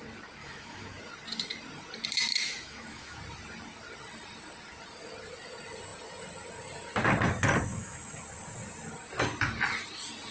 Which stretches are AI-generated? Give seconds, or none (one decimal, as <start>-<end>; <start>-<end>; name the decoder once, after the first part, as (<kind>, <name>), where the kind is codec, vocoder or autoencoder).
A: 0.4-1.0 (autoencoder, DAC-VAE); 2.3-3.2; 7.7-8.2